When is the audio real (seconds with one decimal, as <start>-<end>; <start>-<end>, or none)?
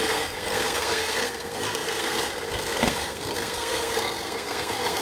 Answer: none